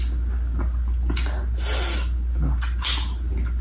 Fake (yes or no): no